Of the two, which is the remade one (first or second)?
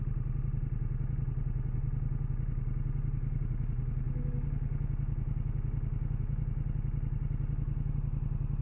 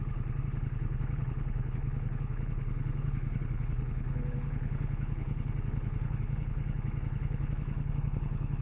second